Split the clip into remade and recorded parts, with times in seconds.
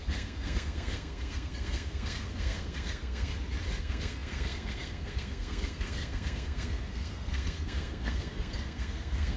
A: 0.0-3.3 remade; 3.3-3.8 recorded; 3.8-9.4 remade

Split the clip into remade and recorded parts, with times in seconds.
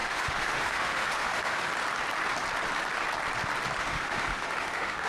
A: 0.0-1.7 remade; 1.7-3.8 recorded; 3.8-5.1 remade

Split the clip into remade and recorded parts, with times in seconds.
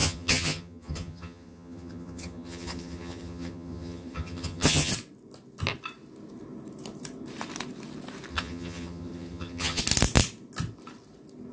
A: 0.0-4.9 remade; 4.9-8.3 recorded; 8.3-9.8 remade; 9.8-11.5 recorded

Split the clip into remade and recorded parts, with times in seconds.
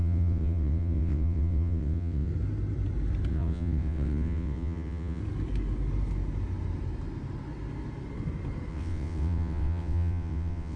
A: 0.0-2.3 remade; 2.3-3.3 recorded; 3.3-5.2 remade; 5.2-8.7 recorded; 8.7-10.8 remade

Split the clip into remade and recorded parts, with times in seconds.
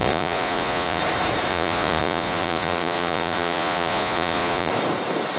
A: 0.0-1.0 remade; 1.0-1.5 recorded; 1.5-4.7 remade; 4.7-5.4 recorded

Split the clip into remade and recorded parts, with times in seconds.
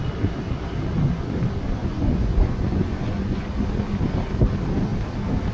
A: 0.0-1.8 recorded; 1.8-3.5 remade; 3.5-5.5 recorded